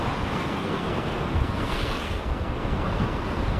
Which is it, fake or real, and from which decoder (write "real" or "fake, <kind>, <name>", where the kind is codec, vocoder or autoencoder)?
fake, codec, SNAC